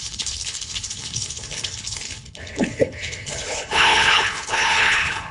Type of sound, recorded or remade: remade